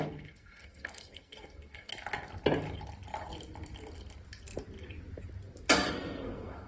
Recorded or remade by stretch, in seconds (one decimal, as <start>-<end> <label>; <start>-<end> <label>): 0.0-1.9 remade; 1.9-5.9 recorded; 5.9-6.7 remade